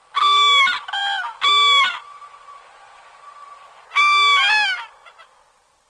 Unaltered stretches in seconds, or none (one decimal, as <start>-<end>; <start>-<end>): 0.0-5.9